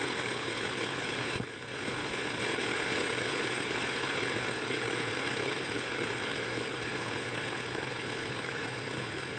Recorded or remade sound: remade